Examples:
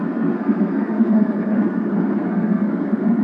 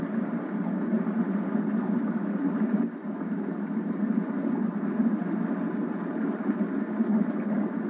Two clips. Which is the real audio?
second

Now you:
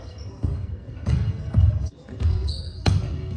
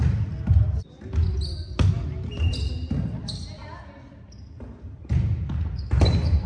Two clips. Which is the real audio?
second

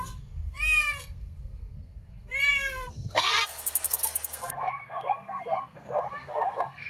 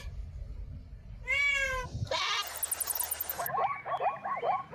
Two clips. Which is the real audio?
second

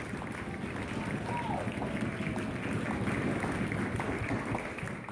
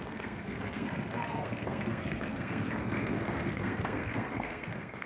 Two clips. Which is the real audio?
first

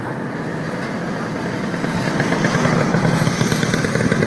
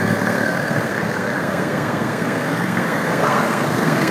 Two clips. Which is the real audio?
first